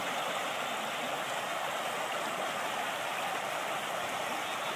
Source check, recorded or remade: recorded